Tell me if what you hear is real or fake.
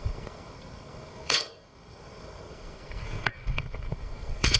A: fake